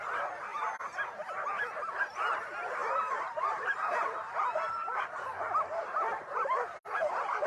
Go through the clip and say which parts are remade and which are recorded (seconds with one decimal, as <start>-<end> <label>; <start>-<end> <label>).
0.0-2.8 recorded; 2.8-7.5 remade